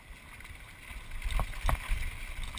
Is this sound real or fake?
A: real